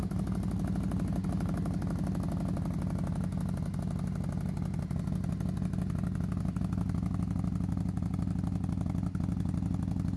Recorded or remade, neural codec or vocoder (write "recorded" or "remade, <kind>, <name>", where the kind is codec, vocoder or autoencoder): recorded